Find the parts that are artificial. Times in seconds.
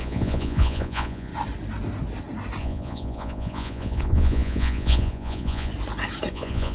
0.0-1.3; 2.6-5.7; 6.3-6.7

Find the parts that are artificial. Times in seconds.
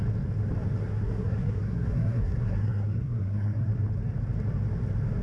0.8-3.7